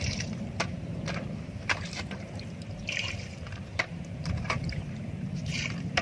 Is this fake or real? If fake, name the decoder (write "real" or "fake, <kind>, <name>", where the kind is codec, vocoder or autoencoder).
fake, vocoder, BigVGAN v2